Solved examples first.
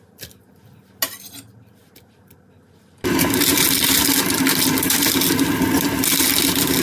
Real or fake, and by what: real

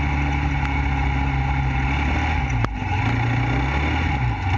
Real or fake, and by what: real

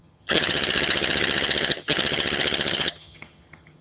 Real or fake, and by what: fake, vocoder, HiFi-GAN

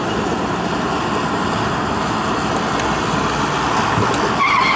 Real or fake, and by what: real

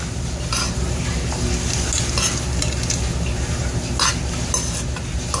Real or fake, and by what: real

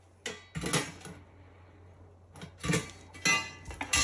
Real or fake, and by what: real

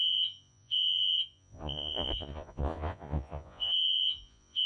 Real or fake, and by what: fake, vocoder, Vocos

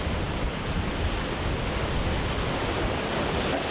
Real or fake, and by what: real